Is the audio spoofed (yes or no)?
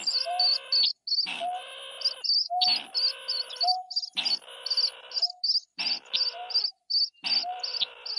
no